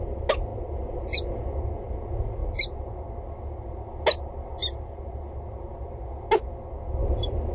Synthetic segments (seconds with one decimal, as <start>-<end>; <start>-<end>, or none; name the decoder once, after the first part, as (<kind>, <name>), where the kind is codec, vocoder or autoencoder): none